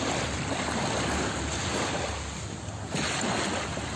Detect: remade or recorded recorded